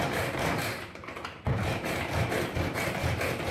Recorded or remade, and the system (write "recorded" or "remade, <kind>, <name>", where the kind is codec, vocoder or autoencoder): remade, vocoder, BigVGAN v2